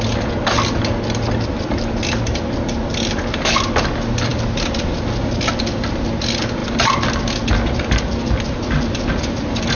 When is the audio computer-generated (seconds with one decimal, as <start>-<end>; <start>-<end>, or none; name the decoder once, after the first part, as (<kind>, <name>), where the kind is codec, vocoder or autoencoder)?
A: none